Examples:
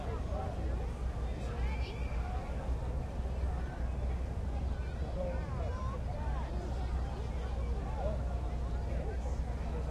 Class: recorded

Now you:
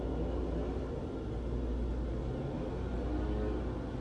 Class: recorded